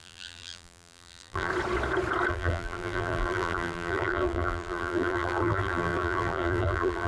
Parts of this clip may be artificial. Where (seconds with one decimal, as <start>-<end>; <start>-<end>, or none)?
0.0-1.5; 2.3-7.1